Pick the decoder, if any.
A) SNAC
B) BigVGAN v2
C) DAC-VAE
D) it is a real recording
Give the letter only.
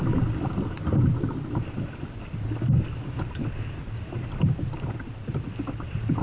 B